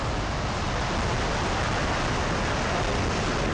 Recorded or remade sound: recorded